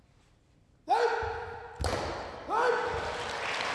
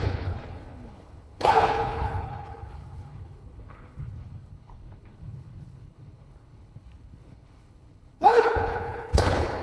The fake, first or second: second